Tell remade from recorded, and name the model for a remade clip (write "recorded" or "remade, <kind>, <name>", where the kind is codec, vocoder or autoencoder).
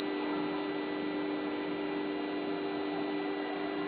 recorded